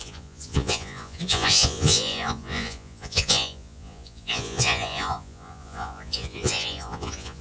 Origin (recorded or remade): remade